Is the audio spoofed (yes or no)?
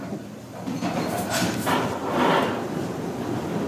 yes